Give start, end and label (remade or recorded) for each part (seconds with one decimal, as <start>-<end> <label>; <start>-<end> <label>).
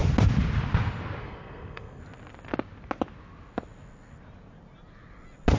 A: 0.0-1.2 recorded; 1.2-2.0 remade; 2.0-5.6 recorded